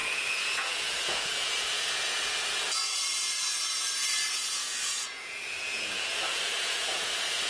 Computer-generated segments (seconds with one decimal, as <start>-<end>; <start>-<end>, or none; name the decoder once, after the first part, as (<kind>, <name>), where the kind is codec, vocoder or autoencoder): 0.0-7.5 (vocoder, Vocos)